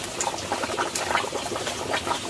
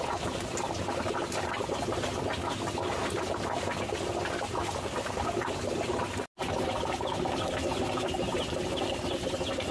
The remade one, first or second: first